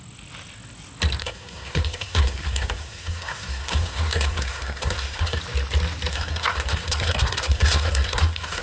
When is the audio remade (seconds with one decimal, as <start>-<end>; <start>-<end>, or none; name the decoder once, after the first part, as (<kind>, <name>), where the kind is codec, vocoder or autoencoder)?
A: 1.2-5.4 (codec, SNAC); 6.1-8.6